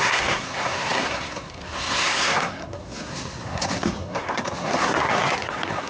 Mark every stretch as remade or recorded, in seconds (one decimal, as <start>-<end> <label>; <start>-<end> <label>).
0.0-5.9 remade